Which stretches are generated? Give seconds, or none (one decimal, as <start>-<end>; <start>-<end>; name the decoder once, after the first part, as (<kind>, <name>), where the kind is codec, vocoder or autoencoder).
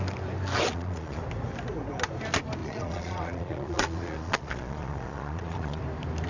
0.7-1.2 (vocoder, Vocos); 2.6-5.8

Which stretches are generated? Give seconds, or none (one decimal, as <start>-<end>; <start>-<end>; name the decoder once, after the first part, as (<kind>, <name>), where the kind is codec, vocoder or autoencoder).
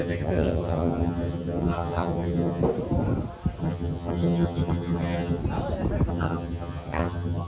0.0-2.6 (vocoder, HiFi-GAN); 3.6-5.4; 6.1-7.5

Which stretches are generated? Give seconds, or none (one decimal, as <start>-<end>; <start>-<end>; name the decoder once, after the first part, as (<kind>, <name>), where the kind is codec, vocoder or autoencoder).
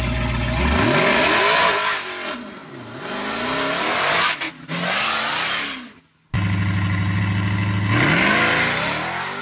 none